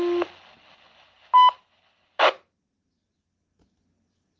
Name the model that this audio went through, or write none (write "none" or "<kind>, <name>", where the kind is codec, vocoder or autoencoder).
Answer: none